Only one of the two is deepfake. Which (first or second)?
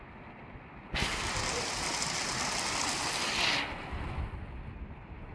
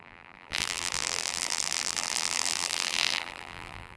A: second